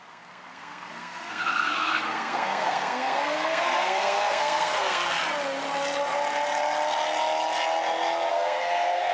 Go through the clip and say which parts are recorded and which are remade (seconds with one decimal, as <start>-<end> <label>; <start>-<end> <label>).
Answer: 0.0-5.2 remade; 5.2-8.3 recorded; 8.3-9.1 remade